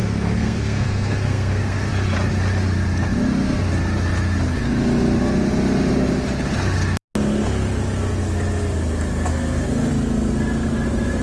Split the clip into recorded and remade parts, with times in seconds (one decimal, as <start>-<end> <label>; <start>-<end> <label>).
0.0-1.9 remade; 1.9-9.3 recorded; 9.3-9.9 remade; 9.9-11.2 recorded